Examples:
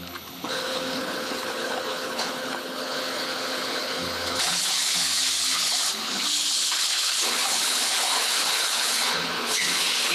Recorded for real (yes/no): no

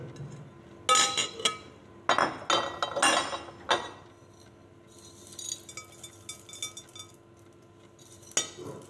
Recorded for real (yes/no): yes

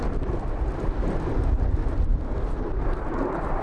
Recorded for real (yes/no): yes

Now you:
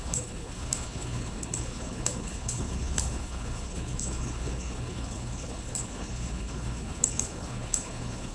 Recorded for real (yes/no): no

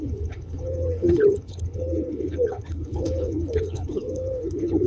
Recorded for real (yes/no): no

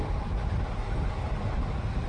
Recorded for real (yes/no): yes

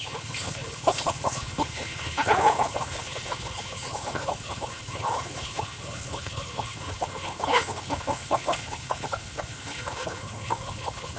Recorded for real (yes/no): no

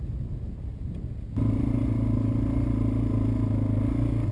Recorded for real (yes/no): yes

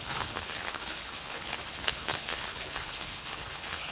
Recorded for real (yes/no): no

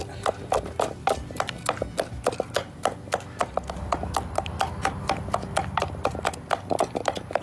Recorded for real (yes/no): yes